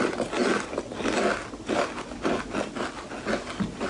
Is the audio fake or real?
real